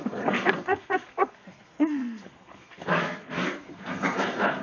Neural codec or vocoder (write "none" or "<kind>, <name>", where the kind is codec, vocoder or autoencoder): codec, SNAC